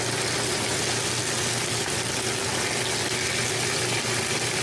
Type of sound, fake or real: real